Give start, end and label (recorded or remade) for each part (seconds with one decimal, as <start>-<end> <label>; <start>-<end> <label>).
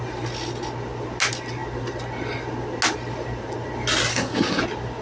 0.0-4.1 recorded; 4.1-4.6 remade; 4.6-5.0 recorded